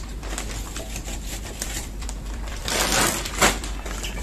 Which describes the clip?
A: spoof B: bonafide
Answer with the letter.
A